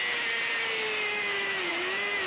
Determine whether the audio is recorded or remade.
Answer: remade